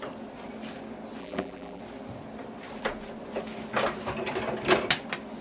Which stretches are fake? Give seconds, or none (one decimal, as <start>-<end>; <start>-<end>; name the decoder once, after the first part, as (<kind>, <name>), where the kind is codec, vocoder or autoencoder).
1.2-1.8 (vocoder, BigVGAN v2)